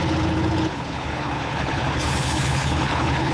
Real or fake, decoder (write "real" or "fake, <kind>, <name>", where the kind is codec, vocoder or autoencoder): fake, codec, HILCodec